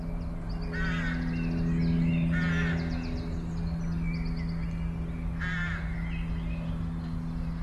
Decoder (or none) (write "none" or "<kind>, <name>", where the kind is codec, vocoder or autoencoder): none